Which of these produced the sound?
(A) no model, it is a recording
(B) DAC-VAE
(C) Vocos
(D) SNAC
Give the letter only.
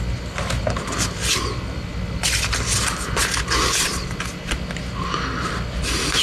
A